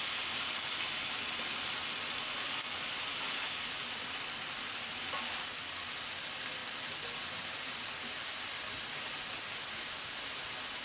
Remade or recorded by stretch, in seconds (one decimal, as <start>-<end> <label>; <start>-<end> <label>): 0.0-10.8 recorded